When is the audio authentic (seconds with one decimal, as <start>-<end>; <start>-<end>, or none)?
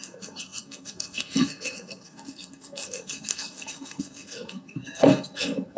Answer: none